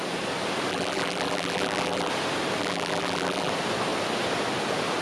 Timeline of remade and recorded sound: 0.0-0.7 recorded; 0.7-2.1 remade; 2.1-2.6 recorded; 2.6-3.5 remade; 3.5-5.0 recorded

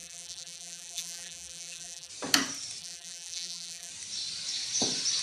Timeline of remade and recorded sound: 0.0-2.1 remade; 2.1-2.8 recorded; 2.8-3.9 remade; 3.9-5.2 recorded